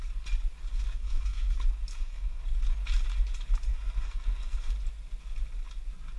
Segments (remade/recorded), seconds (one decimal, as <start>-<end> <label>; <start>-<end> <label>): 0.0-0.7 recorded; 0.7-1.5 remade; 1.5-1.9 recorded; 1.9-2.4 remade; 2.4-3.7 recorded; 3.7-4.7 remade; 4.7-6.2 recorded